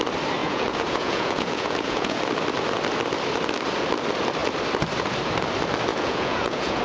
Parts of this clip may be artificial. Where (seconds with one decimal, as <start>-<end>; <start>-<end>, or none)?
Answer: 0.4-2.2; 5.9-6.8